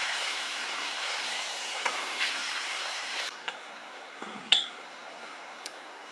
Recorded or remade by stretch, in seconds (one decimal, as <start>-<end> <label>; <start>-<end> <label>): 0.0-6.1 remade